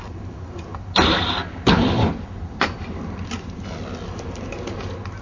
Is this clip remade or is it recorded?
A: recorded